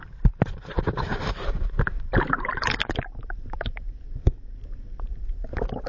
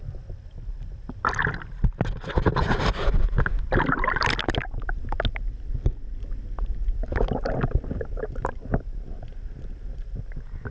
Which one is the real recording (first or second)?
second